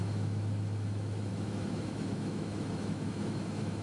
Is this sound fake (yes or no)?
yes